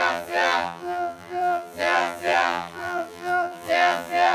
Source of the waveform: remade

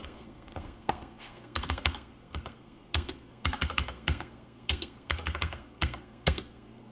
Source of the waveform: remade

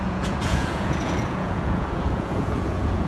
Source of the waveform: remade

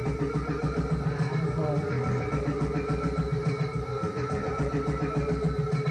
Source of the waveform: recorded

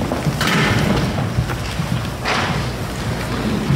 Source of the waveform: recorded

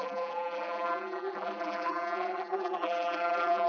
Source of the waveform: remade